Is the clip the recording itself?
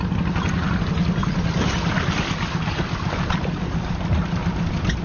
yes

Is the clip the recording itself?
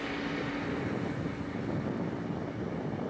yes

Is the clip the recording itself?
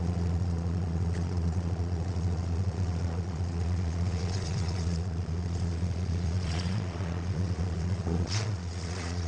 no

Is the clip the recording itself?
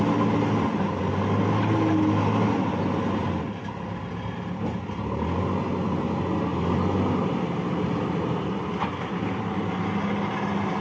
yes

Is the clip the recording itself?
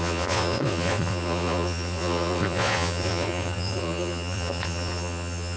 no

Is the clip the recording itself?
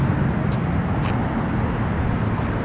yes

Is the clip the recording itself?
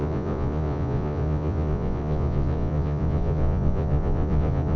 no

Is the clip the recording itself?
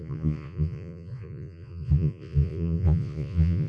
no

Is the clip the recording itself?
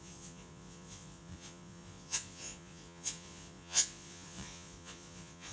no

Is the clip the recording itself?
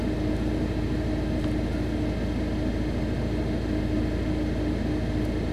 yes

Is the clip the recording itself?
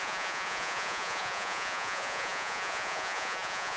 no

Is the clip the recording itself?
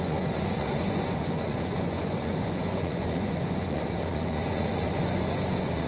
no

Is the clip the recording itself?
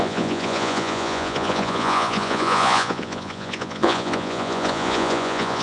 no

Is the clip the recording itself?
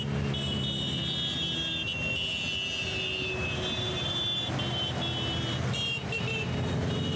yes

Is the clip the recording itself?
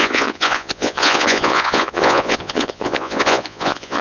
no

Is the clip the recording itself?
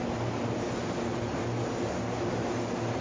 yes